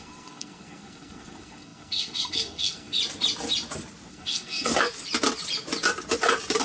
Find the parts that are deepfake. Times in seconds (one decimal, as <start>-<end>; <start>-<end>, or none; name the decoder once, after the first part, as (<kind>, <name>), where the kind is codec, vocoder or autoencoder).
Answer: 0.0-3.0 (codec, SNAC); 4.1-4.7